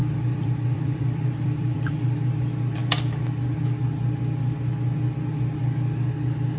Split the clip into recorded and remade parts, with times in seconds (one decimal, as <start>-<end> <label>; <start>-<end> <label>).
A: 0.0-2.3 remade; 2.3-6.6 recorded